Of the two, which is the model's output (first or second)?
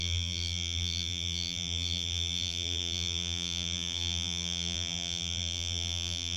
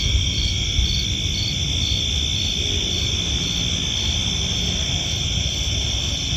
first